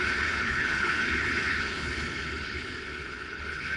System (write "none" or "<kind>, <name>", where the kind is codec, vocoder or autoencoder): codec, HILCodec